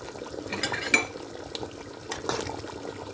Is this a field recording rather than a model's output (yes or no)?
yes